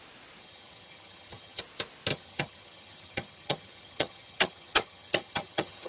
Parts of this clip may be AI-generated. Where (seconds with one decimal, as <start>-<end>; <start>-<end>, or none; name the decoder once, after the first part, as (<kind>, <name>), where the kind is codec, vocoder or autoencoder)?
0.4-1.6 (vocoder, HiFi-GAN); 2.1-5.9